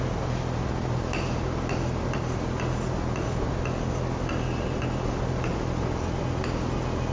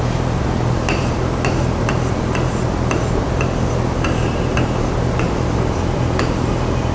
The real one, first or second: first